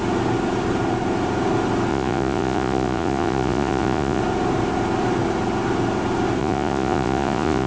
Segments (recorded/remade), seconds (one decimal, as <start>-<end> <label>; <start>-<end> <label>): 0.0-1.9 recorded; 1.9-4.2 remade; 4.2-6.4 recorded; 6.4-7.7 remade